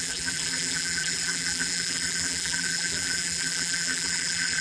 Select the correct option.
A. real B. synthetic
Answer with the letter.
B